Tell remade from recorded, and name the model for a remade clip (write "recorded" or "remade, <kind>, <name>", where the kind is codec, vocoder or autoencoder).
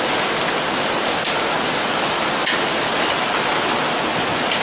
recorded